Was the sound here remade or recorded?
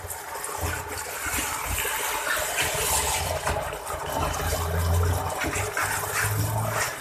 recorded